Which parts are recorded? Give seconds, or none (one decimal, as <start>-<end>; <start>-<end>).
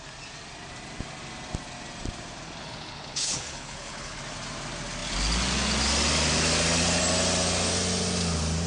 0.0-2.6; 4.2-8.7